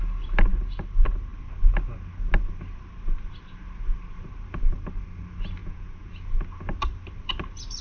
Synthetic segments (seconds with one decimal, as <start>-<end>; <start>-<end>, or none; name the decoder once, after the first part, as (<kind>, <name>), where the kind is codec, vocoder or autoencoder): 5.6-6.1 (vocoder, Vocos)